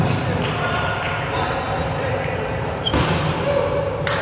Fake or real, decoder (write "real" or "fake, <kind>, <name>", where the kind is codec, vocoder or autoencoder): real